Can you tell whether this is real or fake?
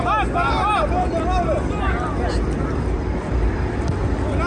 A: real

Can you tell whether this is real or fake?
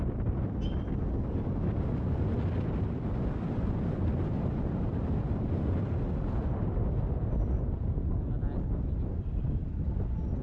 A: real